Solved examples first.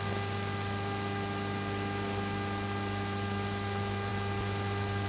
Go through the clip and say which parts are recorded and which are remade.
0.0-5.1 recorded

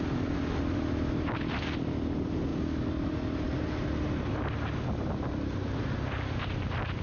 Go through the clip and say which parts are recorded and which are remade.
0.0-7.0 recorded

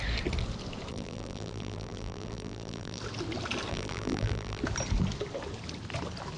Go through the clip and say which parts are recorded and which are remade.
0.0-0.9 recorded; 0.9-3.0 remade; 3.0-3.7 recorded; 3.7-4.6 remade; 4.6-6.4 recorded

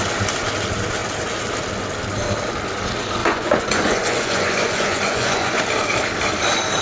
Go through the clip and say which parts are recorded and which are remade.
0.0-3.2 recorded; 3.2-5.6 remade; 5.6-6.8 recorded

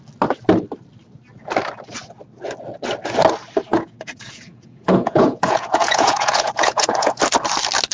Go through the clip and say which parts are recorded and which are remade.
0.0-3.7 recorded; 3.7-7.2 remade; 7.2-7.9 recorded

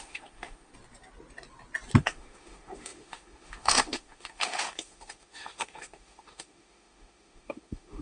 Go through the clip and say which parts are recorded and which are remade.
0.0-0.7 remade; 0.7-2.0 recorded; 2.0-8.0 remade